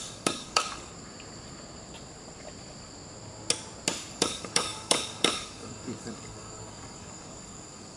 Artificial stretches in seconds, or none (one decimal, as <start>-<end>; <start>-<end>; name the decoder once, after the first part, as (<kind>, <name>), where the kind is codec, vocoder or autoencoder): 0.0-0.9 (codec, DAC); 4.1-8.0